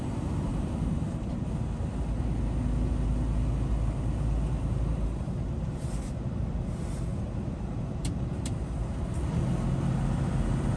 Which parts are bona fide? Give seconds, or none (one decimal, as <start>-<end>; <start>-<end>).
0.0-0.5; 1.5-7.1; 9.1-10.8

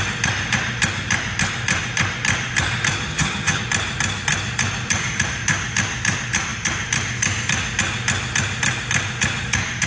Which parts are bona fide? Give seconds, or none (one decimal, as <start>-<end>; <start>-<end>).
0.0-3.1; 3.6-9.9

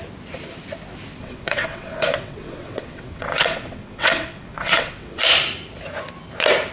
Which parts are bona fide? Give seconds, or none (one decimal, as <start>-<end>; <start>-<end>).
0.0-1.2; 5.2-6.7

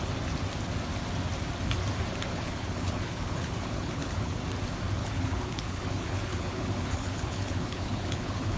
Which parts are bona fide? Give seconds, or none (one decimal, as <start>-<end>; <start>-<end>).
0.0-2.3; 4.4-5.0

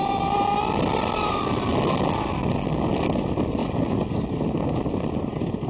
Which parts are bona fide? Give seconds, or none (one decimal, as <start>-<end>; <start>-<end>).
1.7-2.9; 3.6-4.1

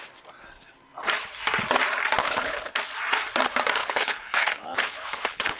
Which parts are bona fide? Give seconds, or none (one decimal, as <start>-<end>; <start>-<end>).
0.0-2.2; 2.7-3.8